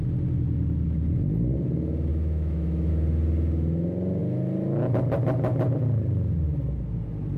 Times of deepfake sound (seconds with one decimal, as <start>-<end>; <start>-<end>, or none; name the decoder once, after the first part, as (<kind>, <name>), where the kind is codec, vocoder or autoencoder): 2.1-2.9 (autoencoder, DAC-VAE)